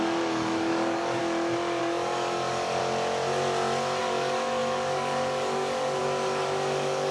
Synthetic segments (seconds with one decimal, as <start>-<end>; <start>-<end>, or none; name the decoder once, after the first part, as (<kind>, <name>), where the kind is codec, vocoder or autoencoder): 0.0-1.2 (codec, DAC); 1.8-2.8; 4.0-7.1